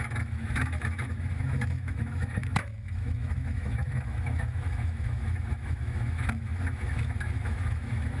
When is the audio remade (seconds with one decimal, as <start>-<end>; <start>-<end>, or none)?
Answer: 0.0-8.2